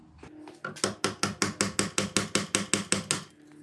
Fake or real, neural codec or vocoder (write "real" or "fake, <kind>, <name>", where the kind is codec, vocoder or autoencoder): real